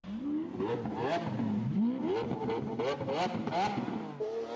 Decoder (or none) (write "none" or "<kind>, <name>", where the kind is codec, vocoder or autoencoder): none